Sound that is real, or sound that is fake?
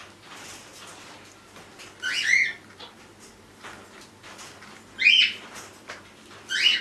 real